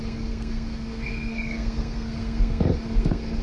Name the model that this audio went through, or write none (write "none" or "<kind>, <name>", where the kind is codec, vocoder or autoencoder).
codec, SNAC